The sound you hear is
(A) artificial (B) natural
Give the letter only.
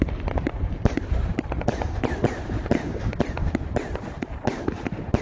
A